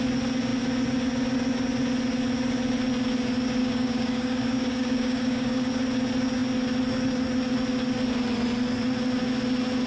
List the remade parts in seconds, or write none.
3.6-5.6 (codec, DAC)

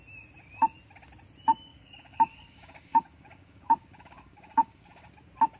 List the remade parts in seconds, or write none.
1.7-5.1 (codec, DAC)